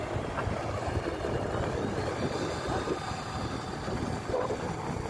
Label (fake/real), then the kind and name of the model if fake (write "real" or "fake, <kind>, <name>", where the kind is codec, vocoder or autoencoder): real